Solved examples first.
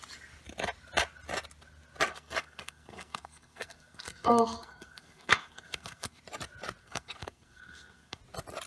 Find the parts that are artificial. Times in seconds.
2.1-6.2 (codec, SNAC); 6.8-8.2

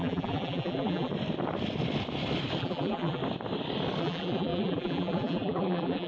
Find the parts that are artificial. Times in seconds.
0.0-1.1 (vocoder, BigVGAN v2); 2.6-3.2; 4.0-6.1

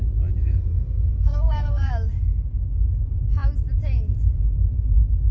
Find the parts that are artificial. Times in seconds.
0.4-1.9 (codec, SNAC)

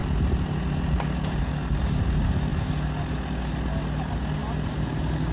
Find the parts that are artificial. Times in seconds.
none